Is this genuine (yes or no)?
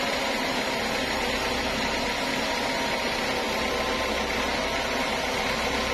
yes